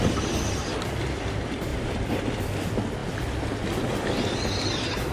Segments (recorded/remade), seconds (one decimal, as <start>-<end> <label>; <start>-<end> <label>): 0.0-1.7 recorded; 1.7-2.2 remade; 2.2-5.1 recorded